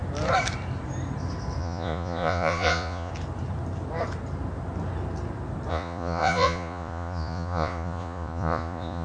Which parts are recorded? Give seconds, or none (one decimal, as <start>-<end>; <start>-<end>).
0.0-1.6; 3.1-5.7